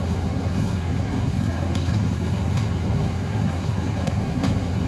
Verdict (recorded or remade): remade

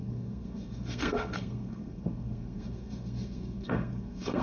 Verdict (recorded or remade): remade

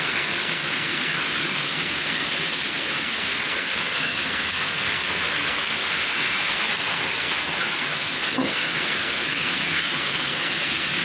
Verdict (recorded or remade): remade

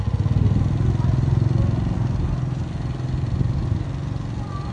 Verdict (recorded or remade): recorded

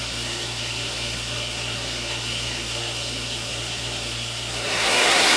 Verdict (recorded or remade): remade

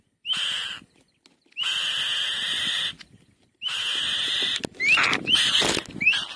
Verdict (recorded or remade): recorded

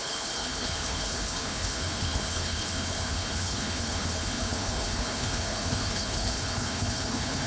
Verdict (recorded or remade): remade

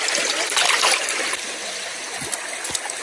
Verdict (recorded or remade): recorded